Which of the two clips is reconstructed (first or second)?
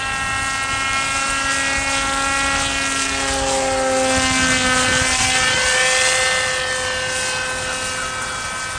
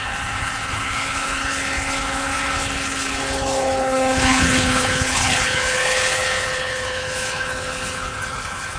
second